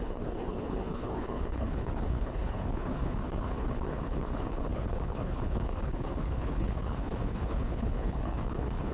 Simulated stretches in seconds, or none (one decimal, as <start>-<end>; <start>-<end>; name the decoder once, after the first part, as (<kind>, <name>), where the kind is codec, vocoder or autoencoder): 0.0-8.9 (codec, HILCodec)